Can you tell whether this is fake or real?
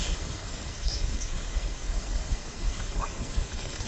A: fake